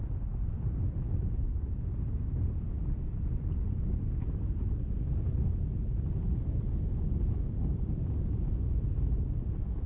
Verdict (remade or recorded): recorded